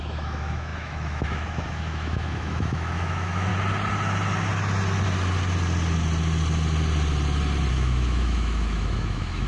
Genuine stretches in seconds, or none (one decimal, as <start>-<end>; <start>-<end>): 3.5-7.7